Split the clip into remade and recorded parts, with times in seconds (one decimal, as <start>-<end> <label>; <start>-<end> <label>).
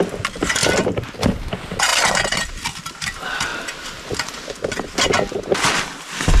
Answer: 0.0-0.6 recorded; 0.6-1.2 remade; 1.2-6.4 recorded